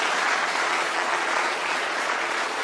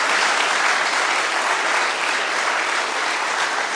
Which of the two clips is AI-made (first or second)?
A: first